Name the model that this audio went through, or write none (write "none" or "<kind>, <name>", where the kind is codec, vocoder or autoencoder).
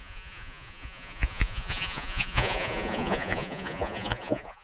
vocoder, Vocos